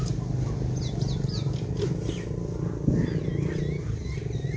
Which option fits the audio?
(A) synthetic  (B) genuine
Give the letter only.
B